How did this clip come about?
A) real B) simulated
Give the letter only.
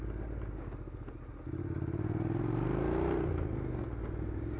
A